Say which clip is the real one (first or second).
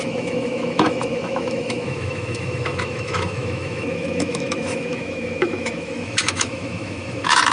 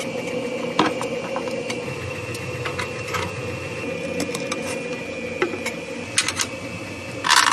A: second